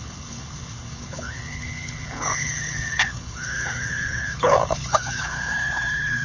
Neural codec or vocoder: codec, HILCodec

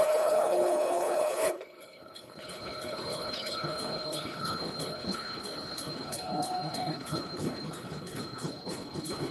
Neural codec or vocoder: codec, HILCodec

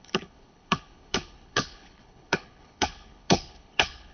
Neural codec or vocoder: codec, HILCodec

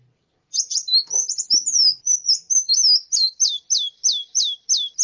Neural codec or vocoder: none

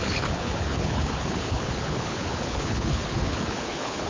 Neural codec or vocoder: codec, HILCodec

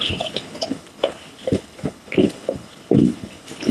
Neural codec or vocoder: codec, HILCodec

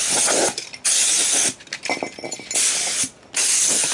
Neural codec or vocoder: none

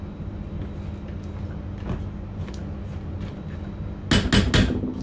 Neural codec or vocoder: none